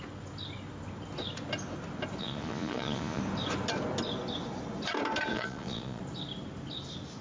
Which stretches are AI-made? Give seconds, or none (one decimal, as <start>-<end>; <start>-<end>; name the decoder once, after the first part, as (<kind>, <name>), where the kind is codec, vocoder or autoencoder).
2.2-3.2 (vocoder, Vocos); 5.3-6.0